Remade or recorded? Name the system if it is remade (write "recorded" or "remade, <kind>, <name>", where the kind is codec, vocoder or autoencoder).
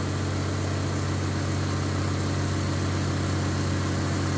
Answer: recorded